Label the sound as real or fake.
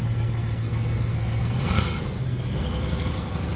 fake